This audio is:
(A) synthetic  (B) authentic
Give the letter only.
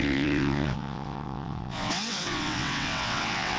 A